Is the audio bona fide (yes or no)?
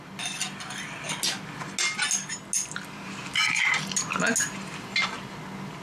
yes